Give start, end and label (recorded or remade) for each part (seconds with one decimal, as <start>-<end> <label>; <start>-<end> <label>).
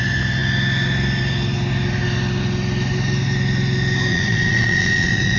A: 0.0-4.1 recorded; 4.1-5.4 remade